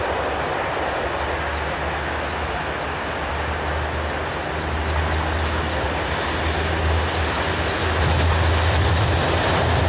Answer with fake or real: real